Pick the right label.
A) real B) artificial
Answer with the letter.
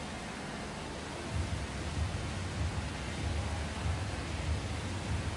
A